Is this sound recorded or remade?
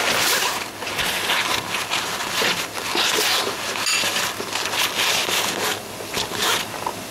recorded